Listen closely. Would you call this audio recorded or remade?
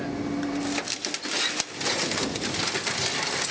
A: recorded